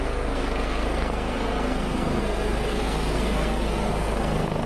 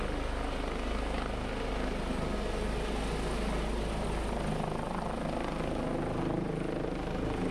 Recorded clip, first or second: second